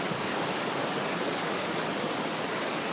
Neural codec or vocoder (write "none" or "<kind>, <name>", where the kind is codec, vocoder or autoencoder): codec, DAC